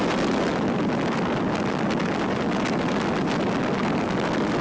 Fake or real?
real